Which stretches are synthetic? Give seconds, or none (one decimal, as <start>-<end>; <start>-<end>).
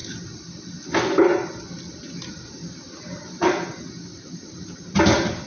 2.3-3.7; 4.9-5.5